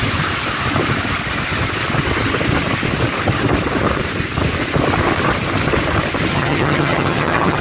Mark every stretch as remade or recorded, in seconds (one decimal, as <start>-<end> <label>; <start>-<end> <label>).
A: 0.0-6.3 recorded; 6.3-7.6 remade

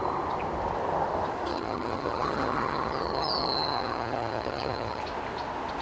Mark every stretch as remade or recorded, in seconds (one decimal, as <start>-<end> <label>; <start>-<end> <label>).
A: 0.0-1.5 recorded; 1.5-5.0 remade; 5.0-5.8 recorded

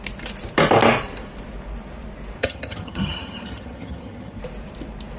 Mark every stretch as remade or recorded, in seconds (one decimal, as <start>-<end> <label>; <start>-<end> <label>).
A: 0.0-2.4 recorded; 2.4-4.4 remade; 4.4-5.2 recorded